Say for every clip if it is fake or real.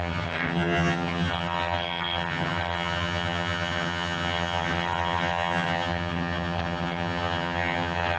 fake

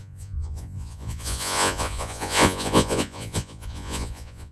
fake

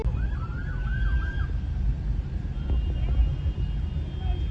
real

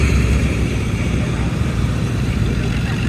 fake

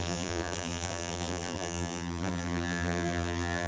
fake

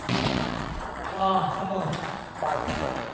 fake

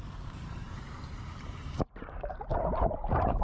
fake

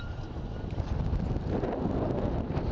real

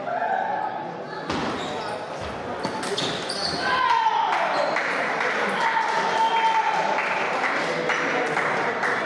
real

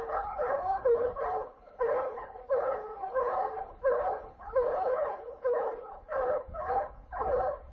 fake